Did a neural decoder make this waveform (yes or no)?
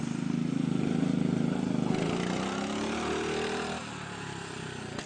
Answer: no